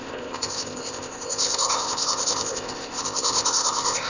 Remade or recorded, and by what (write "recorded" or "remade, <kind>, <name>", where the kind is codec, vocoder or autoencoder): remade, codec, ZipCodec